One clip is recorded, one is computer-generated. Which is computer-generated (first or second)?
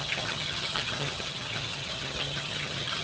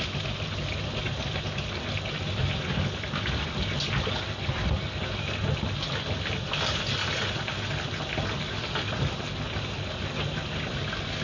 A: first